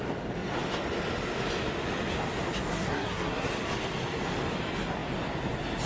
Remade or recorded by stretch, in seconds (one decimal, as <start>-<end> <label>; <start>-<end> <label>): 0.0-2.7 recorded; 2.7-3.5 remade; 3.5-5.9 recorded